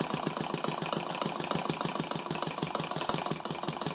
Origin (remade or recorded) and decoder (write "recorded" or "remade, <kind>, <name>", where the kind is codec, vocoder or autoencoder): recorded